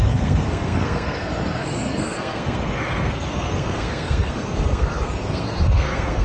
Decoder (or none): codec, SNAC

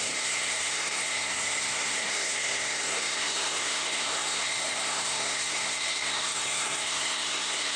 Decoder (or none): codec, SNAC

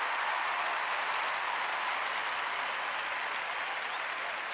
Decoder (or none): none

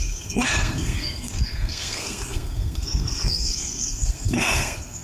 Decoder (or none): codec, SNAC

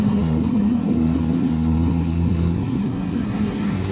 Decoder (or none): codec, SNAC